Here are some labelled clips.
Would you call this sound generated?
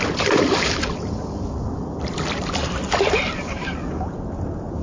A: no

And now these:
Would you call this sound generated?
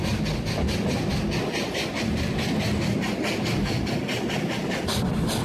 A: no